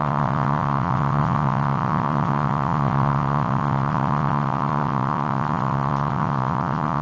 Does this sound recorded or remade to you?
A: remade